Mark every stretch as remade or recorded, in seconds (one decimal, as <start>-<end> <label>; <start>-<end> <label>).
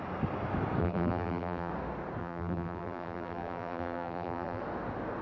0.0-0.8 recorded; 0.8-1.7 remade; 1.7-2.2 recorded; 2.2-4.6 remade; 4.6-5.2 recorded